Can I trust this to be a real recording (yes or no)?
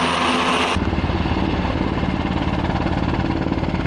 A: yes